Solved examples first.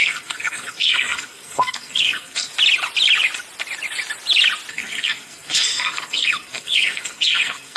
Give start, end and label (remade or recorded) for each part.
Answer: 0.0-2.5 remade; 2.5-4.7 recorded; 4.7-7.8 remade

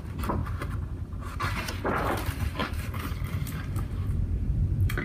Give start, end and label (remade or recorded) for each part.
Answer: 0.0-0.4 remade; 0.4-1.7 recorded; 1.7-5.0 remade